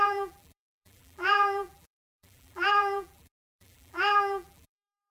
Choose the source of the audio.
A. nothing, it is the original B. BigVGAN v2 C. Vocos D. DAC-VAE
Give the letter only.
B